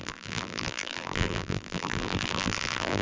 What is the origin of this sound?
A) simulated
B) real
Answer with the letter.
A